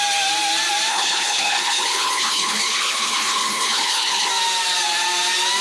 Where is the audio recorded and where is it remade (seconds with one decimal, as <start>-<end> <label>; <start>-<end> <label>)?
0.0-0.9 recorded; 0.9-4.3 remade; 4.3-5.6 recorded